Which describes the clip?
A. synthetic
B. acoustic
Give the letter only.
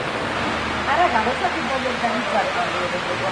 B